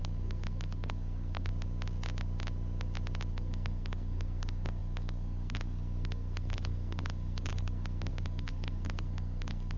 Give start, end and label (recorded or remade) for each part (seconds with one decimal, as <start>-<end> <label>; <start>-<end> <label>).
0.0-1.5 remade; 1.5-3.3 recorded; 3.3-9.8 remade